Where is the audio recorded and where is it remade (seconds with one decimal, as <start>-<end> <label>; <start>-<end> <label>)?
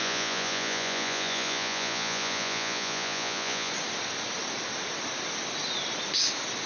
0.0-3.7 remade; 3.7-6.7 recorded